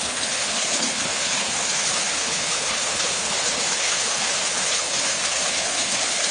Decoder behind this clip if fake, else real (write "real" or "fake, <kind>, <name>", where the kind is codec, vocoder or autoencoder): fake, codec, HILCodec